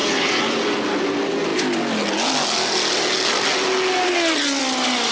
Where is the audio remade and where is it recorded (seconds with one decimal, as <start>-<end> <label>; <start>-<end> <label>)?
0.0-1.1 remade; 1.1-5.1 recorded

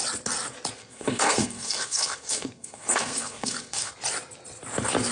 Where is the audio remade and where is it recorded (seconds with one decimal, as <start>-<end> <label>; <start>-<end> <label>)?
0.0-0.8 recorded; 0.8-3.9 remade; 3.9-5.1 recorded

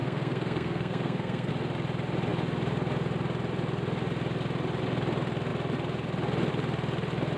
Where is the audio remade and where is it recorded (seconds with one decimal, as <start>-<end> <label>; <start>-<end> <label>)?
0.0-1.5 remade; 1.5-7.4 recorded

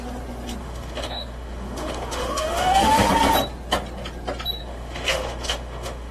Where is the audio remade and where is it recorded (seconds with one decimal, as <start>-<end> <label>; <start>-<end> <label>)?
0.0-0.6 recorded; 0.6-3.1 remade; 3.1-4.6 recorded; 4.6-6.1 remade

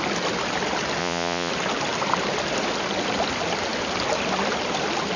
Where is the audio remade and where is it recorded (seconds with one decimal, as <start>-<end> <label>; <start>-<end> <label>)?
0.0-1.0 recorded; 1.0-1.5 remade; 1.5-5.2 recorded

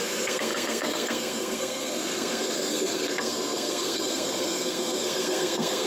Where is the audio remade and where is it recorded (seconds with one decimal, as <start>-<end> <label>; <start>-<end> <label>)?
0.0-5.9 remade